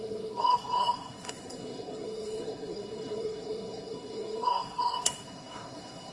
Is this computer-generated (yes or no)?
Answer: yes